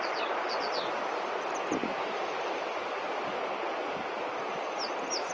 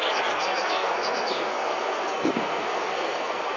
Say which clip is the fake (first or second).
second